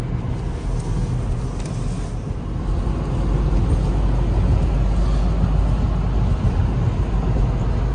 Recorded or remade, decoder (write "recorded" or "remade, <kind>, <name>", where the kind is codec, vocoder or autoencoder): recorded